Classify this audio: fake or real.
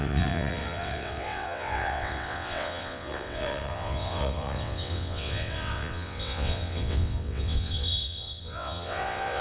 fake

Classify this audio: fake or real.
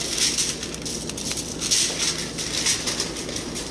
real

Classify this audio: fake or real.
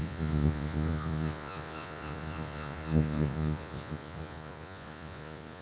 fake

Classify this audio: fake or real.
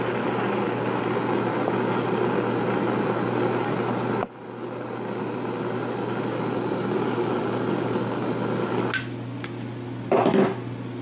real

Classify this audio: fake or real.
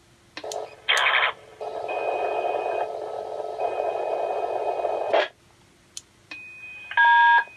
real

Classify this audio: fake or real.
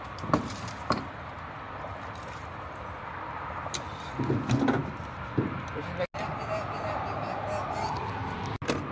real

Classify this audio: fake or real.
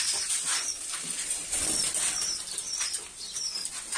fake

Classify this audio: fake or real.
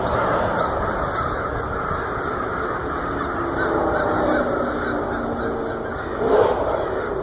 real